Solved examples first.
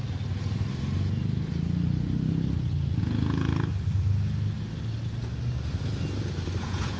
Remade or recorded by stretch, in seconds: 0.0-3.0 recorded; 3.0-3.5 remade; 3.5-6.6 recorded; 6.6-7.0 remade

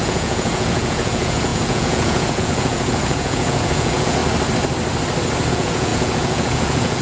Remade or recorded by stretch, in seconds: 0.0-4.2 remade; 4.2-5.5 recorded; 5.5-7.0 remade

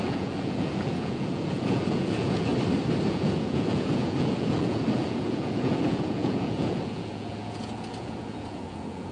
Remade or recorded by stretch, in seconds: 0.0-2.5 remade; 2.5-3.1 recorded; 3.1-9.1 remade

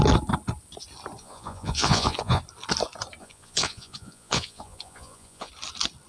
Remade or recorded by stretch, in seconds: 0.0-1.2 recorded; 1.2-2.4 remade; 2.4-3.2 recorded; 3.2-5.5 remade; 5.5-6.1 recorded

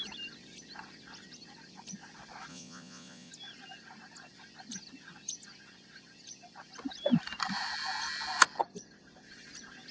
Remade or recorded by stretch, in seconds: 0.0-2.5 recorded; 2.5-3.3 remade; 3.3-9.9 recorded

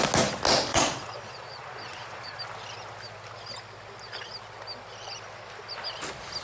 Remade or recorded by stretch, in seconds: 0.0-0.7 recorded; 0.7-2.4 remade; 2.4-6.4 recorded

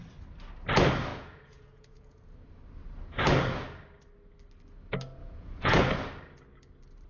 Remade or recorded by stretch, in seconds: 0.0-1.1 recorded; 1.1-2.3 remade; 2.3-5.2 recorded; 5.2-5.8 remade; 5.8-7.1 recorded